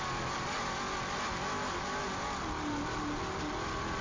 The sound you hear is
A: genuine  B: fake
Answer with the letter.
A